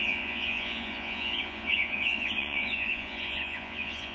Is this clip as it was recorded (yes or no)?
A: no